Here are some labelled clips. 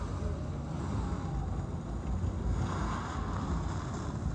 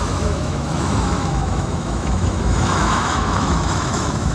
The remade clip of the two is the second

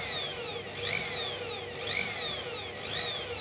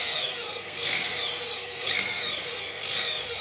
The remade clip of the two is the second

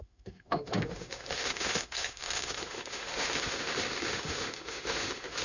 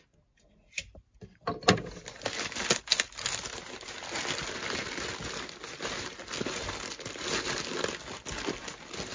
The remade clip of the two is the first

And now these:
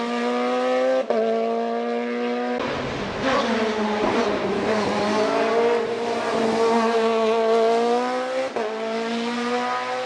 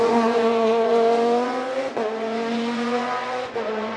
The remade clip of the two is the second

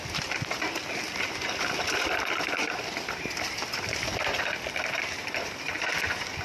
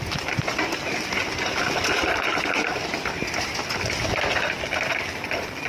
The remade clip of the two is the first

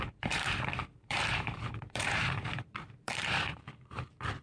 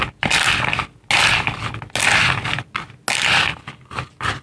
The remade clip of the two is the first